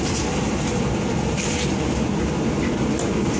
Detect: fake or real real